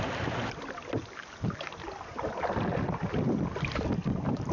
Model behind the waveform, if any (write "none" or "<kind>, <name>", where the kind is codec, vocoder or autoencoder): none